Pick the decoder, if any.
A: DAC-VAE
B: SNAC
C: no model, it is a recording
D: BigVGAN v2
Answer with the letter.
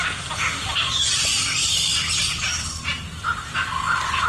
C